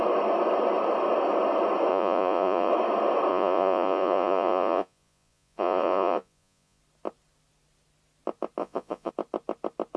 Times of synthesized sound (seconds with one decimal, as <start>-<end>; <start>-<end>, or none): 1.9-2.7; 3.3-6.8; 8.6-9.1